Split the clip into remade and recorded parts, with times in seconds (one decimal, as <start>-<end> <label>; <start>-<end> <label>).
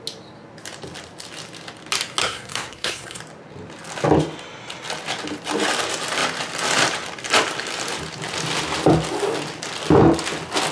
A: 0.0-2.2 recorded; 2.2-3.2 remade; 3.2-10.7 recorded